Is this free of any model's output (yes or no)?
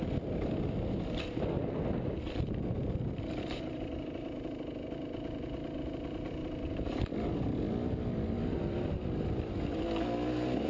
yes